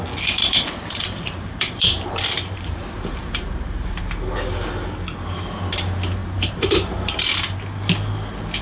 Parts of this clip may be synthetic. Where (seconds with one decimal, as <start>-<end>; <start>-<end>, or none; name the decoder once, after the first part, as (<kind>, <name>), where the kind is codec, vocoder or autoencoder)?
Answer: 0.4-4.0 (vocoder, BigVGAN v2); 6.2-7.4